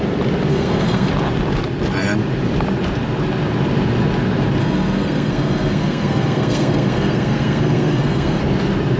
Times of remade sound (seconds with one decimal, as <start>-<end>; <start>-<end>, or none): 0.5-1.1; 4.6-8.4